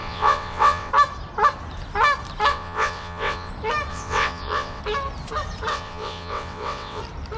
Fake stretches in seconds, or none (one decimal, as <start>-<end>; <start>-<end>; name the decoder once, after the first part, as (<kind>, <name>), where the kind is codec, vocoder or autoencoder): 0.0-0.9 (vocoder, WaveNeXt); 2.5-3.5; 3.9-4.8; 5.7-7.0